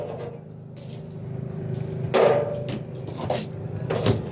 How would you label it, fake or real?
real